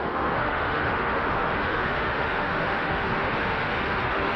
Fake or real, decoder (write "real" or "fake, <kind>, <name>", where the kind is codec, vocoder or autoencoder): fake, autoencoder, DAC-VAE